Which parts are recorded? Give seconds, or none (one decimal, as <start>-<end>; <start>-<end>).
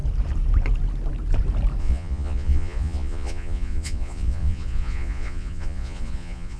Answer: 0.0-1.8